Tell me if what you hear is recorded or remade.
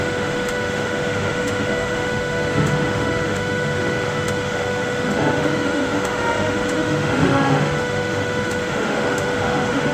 remade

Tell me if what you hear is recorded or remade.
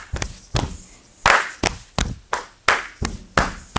recorded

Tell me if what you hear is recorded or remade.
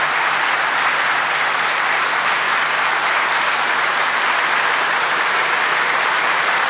recorded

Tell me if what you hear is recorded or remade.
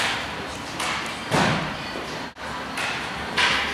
recorded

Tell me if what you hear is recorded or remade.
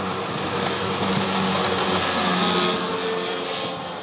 recorded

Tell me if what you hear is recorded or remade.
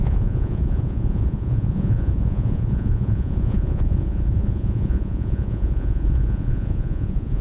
remade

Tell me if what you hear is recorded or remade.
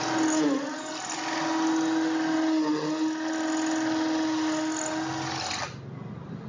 recorded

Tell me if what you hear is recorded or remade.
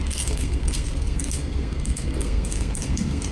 remade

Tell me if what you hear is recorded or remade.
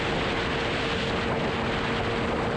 recorded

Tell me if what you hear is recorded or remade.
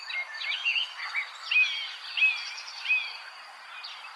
recorded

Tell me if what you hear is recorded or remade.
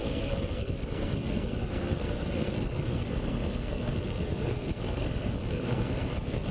remade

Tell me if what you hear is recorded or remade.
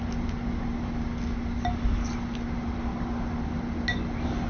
recorded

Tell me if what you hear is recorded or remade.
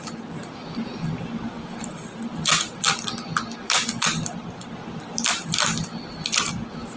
recorded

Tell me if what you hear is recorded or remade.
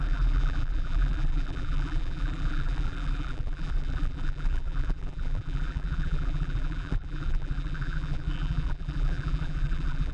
remade